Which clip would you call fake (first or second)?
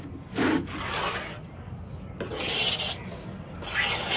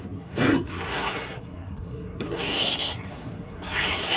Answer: second